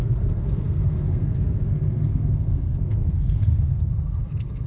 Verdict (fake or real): fake